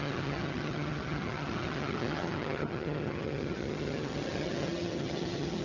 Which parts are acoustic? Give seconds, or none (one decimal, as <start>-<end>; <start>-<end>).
none